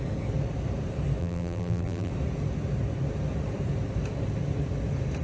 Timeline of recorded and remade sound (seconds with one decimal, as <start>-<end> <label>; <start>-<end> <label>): 0.0-1.2 recorded; 1.2-2.1 remade; 2.1-5.2 recorded